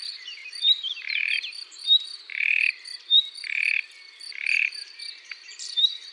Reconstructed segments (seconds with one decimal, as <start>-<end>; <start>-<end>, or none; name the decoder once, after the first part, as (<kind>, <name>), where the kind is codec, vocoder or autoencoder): 0.0-6.1 (vocoder, BigVGAN v2)